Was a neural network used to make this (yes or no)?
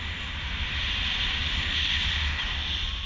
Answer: no